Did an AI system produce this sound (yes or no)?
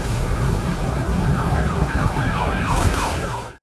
yes